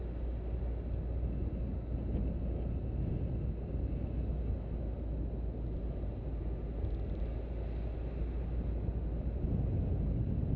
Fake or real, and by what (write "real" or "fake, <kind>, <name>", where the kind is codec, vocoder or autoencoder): real